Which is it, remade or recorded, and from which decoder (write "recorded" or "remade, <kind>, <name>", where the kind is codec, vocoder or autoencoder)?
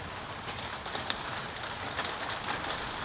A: remade, vocoder, BigVGAN v2